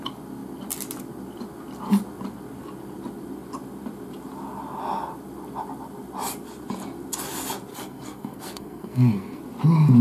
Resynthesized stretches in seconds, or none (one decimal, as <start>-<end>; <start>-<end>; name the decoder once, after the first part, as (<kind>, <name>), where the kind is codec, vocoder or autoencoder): 7.7-9.4 (codec, SNAC)